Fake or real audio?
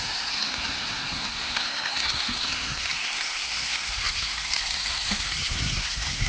fake